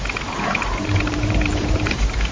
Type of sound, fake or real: fake